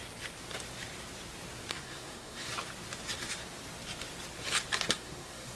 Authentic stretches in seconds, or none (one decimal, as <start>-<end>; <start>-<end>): 0.0-1.7; 2.5-4.9